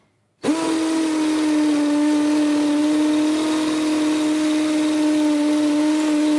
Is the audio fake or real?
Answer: real